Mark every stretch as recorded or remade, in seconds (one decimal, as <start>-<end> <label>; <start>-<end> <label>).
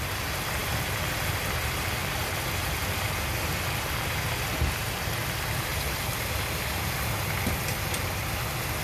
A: 0.0-5.7 recorded; 5.7-6.9 remade; 6.9-8.8 recorded